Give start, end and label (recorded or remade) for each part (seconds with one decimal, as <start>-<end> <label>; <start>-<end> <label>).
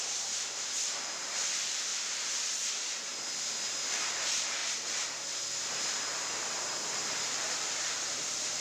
0.0-3.1 remade; 3.1-3.7 recorded; 3.7-4.6 remade; 4.6-5.7 recorded; 5.7-8.6 remade